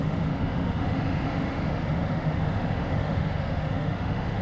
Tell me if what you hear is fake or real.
fake